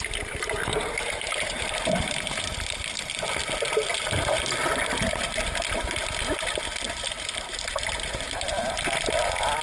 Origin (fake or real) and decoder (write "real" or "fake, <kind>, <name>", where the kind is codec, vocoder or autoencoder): real